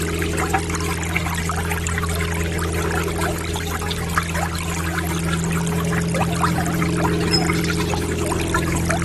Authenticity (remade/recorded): recorded